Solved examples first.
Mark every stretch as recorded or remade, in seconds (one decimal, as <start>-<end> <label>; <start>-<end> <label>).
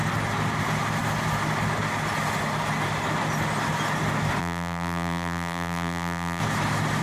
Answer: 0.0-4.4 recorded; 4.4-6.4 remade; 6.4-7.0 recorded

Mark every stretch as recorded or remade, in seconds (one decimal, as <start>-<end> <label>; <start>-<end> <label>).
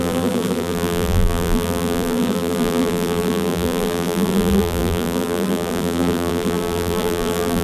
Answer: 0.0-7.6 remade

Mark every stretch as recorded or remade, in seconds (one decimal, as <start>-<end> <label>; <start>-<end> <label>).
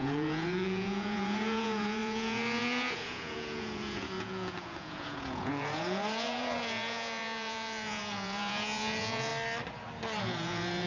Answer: 0.0-9.3 remade; 9.3-10.2 recorded; 10.2-10.9 remade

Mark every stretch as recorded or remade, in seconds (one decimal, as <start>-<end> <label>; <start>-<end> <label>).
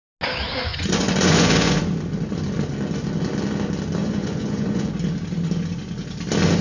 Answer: 0.0-0.7 recorded; 0.7-1.8 remade; 1.8-4.0 recorded; 4.0-4.9 remade; 4.9-6.6 recorded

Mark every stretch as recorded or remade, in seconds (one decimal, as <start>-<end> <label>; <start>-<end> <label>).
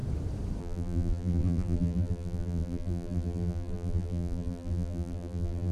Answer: 0.0-0.6 recorded; 0.6-5.7 remade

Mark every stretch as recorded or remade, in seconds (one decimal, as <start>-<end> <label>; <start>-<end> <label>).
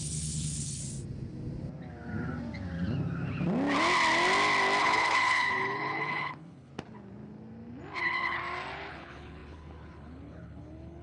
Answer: 0.0-0.8 remade; 0.8-4.8 recorded; 4.8-6.7 remade; 6.7-8.0 recorded; 8.0-8.4 remade; 8.4-8.9 recorded; 8.9-11.0 remade